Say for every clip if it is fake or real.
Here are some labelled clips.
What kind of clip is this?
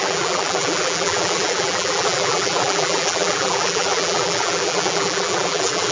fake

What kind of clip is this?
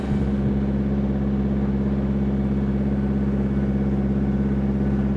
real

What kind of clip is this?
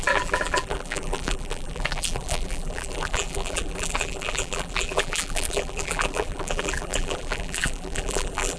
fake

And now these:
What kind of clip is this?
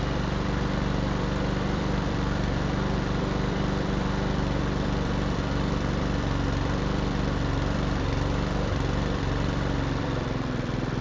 fake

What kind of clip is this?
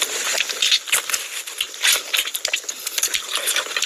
real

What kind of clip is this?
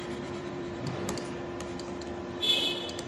fake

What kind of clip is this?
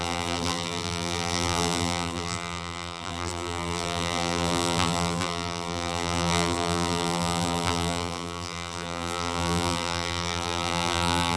fake